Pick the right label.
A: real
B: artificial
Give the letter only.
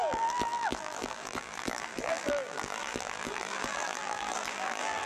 B